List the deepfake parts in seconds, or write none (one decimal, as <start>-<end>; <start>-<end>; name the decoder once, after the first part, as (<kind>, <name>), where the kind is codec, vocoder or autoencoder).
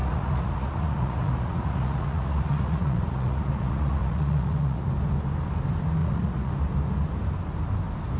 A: 0.0-4.9 (vocoder, Vocos); 6.0-6.5